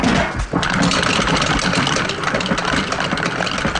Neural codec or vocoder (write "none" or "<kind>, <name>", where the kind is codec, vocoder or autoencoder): none